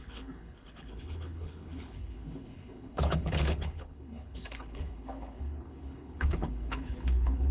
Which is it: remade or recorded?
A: remade